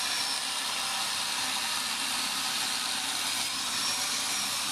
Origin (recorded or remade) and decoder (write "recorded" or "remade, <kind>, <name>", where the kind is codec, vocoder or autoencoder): recorded